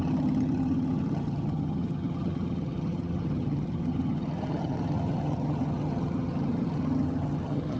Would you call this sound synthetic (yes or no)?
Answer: yes